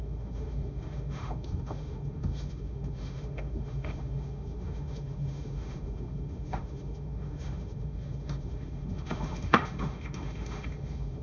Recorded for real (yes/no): no